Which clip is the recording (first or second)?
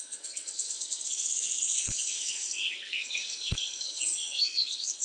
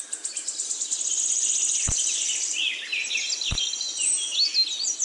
second